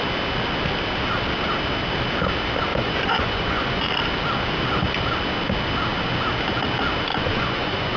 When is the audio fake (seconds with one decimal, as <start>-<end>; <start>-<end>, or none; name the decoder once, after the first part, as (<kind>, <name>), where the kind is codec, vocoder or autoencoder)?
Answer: 2.7-3.9 (vocoder, Vocos); 7.1-8.0